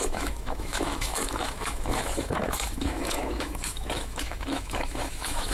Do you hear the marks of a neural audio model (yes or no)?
yes